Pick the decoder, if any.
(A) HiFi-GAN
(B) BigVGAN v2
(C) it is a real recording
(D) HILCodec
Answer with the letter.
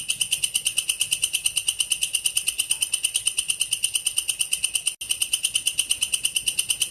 C